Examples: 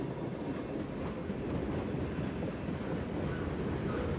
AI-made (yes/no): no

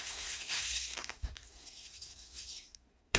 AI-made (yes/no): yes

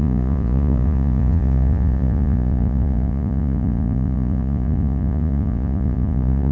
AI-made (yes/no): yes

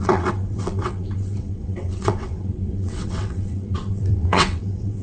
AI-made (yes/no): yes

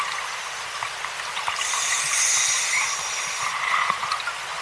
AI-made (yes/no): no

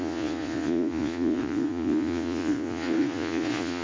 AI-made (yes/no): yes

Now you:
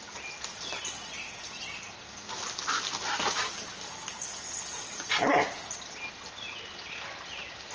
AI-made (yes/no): no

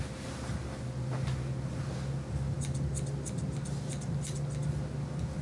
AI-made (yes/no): no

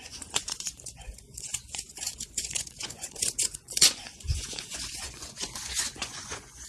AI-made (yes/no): yes